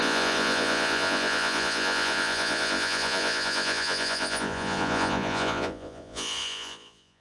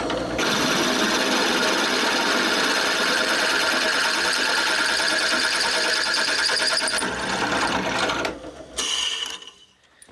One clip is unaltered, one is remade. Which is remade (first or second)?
first